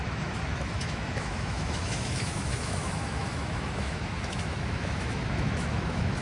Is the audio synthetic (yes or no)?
yes